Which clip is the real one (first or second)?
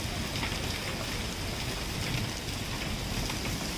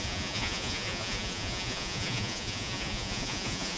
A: first